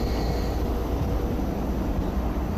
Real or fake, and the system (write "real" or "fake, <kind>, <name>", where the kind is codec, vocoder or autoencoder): real